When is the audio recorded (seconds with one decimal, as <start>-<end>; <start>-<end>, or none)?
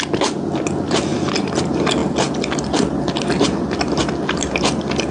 0.0-5.1